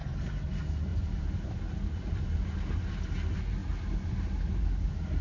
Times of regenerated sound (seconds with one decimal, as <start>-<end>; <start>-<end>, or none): 0.0-0.5; 0.9-1.6